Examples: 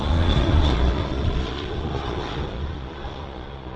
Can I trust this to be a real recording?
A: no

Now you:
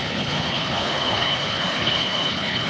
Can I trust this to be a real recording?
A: no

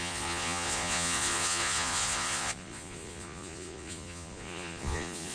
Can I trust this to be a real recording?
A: no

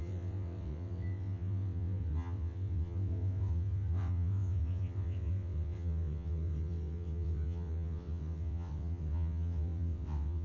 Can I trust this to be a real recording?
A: no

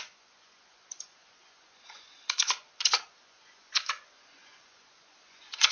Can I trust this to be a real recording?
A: no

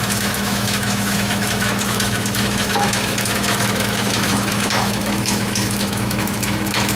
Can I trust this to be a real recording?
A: no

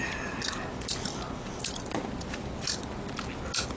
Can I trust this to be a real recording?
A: yes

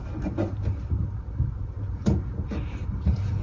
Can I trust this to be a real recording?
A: no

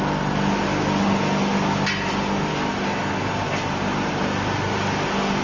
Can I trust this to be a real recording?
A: yes